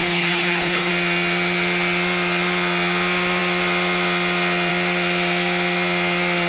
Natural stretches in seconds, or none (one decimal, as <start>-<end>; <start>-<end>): 0.9-6.5